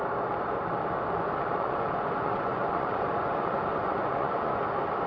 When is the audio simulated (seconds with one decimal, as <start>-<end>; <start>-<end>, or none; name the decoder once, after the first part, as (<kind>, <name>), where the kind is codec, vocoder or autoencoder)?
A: 1.5-4.6 (vocoder, Vocos)